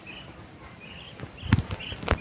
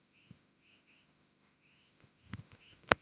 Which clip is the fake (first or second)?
second